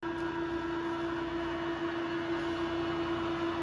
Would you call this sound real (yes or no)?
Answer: yes